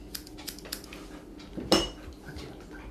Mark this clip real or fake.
real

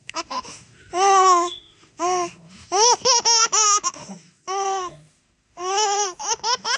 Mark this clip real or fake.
fake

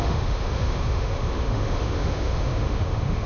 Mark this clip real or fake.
fake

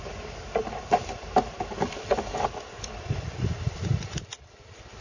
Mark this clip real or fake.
real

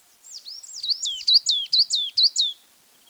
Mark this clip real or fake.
real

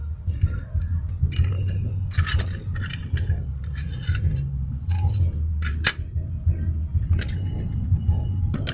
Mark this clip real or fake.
real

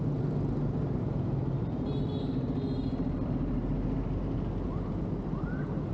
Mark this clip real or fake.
real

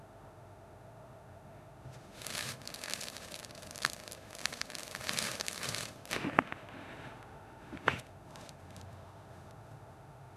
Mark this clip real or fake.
fake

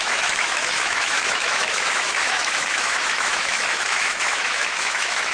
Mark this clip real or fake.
fake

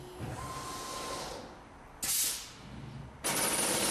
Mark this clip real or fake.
real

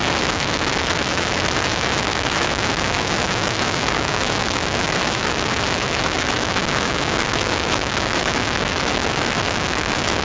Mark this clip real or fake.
fake